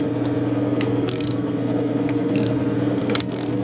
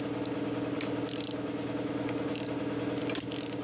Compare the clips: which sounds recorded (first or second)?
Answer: second